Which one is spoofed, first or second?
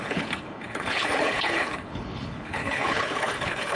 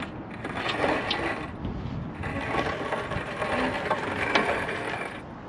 first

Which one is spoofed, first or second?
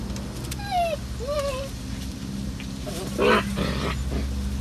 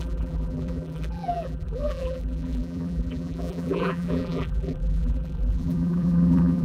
second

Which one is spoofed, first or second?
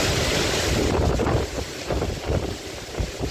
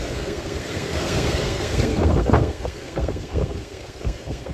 second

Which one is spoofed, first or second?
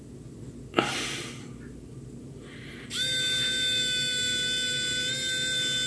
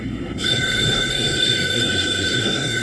second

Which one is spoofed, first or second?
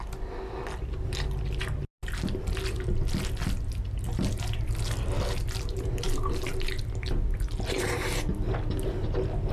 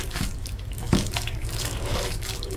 second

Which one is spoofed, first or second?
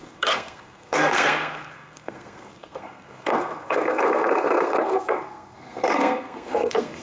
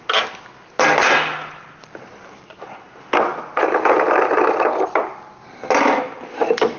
first